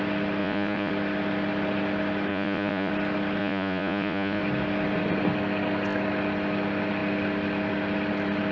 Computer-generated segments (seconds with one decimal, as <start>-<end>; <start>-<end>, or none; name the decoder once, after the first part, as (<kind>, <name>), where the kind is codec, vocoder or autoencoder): 0.4-0.9 (vocoder, Vocos); 2.3-2.9; 3.4-4.4